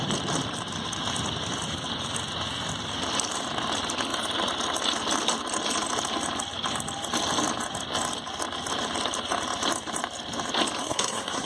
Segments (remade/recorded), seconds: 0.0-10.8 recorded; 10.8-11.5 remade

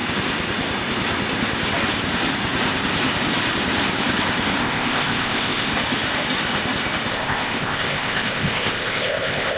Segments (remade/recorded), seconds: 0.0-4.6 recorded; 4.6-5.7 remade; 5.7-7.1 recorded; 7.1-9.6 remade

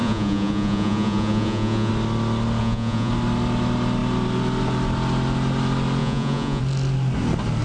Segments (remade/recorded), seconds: 0.0-1.9 remade; 1.9-2.6 recorded; 2.6-3.1 remade; 3.1-6.0 recorded; 6.0-6.6 remade; 6.6-7.6 recorded

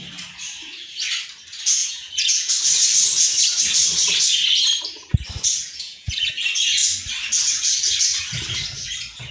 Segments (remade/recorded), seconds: 0.0-1.8 recorded; 1.8-2.5 remade; 2.5-5.6 recorded; 5.6-6.3 remade; 6.3-9.3 recorded